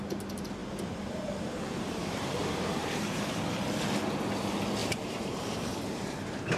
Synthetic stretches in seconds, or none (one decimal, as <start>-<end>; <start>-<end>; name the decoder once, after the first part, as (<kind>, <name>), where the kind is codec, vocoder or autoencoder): 0.6-3.3 (vocoder, BigVGAN v2); 4.8-6.6